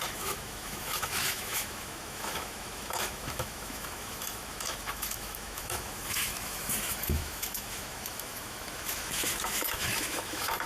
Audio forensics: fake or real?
fake